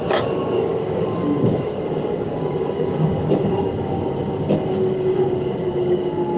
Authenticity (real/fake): fake